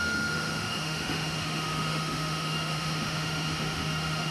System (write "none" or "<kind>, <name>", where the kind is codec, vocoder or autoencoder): autoencoder, DAC-VAE